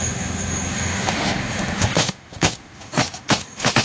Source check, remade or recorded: remade